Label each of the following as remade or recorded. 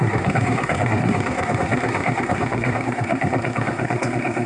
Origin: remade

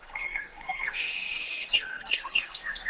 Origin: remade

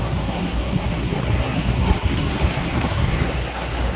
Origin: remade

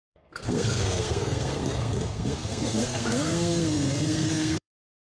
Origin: remade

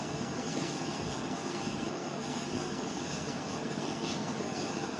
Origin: remade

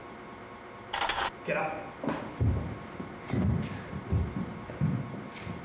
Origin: recorded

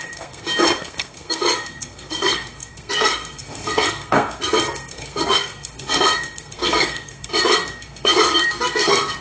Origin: remade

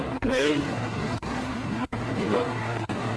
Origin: remade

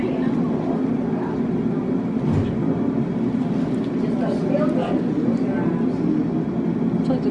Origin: recorded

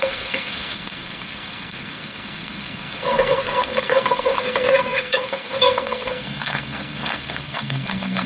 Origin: remade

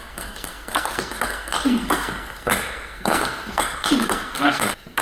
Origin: remade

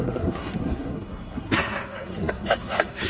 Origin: remade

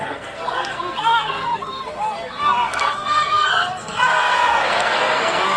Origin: remade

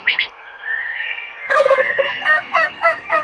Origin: remade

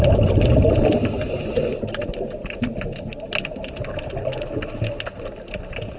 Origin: recorded